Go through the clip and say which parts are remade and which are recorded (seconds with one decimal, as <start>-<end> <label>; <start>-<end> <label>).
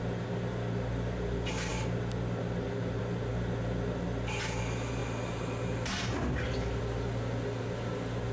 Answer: 0.0-8.3 recorded